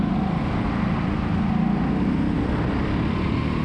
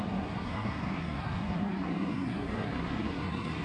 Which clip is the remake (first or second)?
second